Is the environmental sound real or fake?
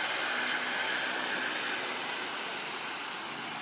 real